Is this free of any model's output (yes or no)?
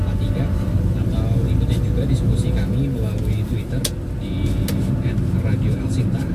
yes